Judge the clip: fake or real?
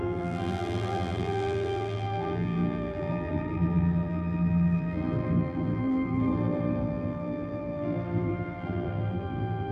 fake